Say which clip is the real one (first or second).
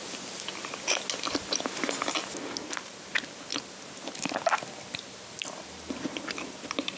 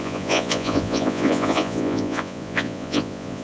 first